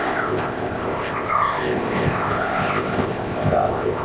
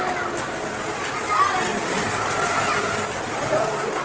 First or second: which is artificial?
first